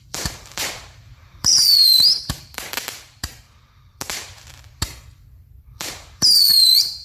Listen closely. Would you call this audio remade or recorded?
remade